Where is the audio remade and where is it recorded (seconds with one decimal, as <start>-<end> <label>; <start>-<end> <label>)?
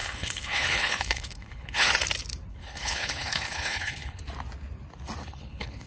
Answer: 0.0-1.9 remade; 1.9-2.5 recorded; 2.5-4.2 remade; 4.2-5.2 recorded; 5.2-5.9 remade